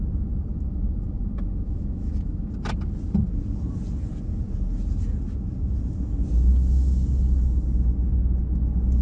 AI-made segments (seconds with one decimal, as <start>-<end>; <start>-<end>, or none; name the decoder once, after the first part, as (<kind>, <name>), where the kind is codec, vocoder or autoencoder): 0.5-2.5 (autoencoder, DAC-VAE)